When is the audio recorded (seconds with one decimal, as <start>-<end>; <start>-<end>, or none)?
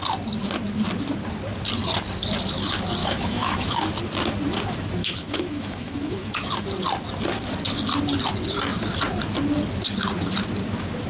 0.0-3.0; 3.8-5.0; 6.5-11.1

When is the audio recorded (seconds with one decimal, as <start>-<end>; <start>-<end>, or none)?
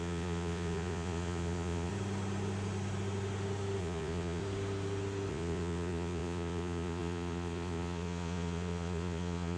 1.9-3.8; 4.4-5.3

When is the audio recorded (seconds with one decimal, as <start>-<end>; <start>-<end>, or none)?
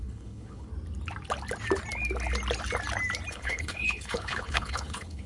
0.7-3.3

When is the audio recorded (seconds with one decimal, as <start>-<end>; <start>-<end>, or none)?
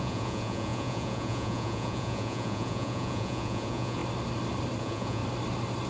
4.0-4.8; 5.2-5.9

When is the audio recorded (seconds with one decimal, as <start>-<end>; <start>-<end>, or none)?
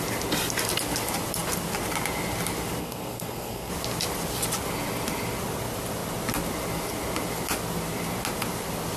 0.0-2.8; 3.7-9.0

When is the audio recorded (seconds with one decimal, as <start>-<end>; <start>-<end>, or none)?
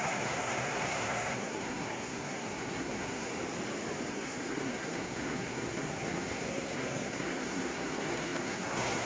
3.3-4.1